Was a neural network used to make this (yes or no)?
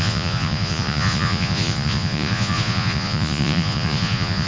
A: yes